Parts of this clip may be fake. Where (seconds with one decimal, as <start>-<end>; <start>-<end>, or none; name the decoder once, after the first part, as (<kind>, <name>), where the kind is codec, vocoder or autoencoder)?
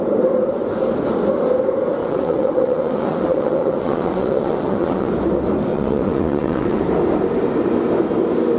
2.0-5.1 (vocoder, WaveNeXt); 5.7-6.8